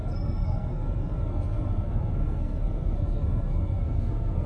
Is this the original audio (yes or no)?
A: no